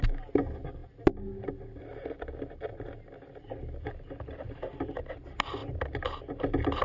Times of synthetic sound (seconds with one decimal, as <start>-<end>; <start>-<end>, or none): none